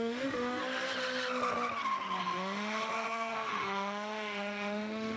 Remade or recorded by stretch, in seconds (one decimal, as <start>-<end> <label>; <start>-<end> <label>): 0.0-0.6 remade; 0.6-2.2 recorded; 2.2-5.2 remade